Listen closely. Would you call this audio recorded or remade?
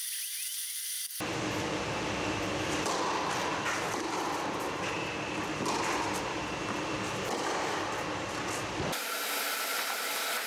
recorded